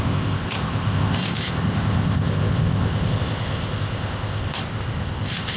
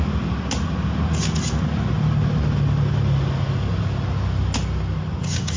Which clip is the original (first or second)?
second